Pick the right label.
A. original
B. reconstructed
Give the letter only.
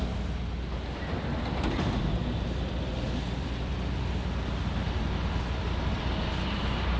A